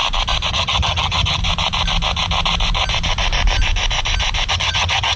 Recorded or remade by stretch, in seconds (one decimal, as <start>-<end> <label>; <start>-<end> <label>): 0.0-0.5 recorded; 0.5-1.4 remade; 1.4-4.5 recorded; 4.5-5.2 remade